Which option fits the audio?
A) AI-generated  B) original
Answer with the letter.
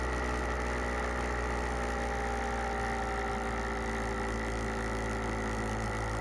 B